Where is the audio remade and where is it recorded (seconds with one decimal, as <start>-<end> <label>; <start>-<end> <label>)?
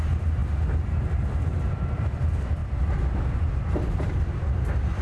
0.0-0.4 remade; 0.4-2.0 recorded; 2.0-5.0 remade